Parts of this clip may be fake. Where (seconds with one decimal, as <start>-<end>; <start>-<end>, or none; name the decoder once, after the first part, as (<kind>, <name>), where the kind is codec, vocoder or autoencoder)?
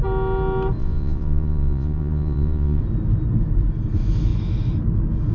0.8-2.8 (vocoder, Vocos)